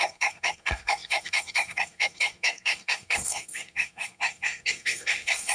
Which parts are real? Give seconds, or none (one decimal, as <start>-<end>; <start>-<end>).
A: none